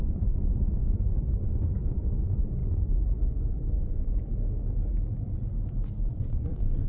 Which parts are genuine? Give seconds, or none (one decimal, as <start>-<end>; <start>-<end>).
4.3-6.1